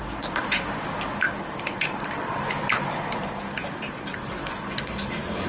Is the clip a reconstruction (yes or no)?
yes